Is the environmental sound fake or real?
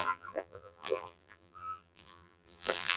fake